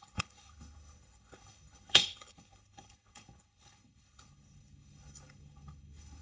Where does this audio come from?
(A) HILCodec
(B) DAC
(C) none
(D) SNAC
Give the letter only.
A